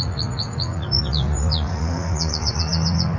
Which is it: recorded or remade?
remade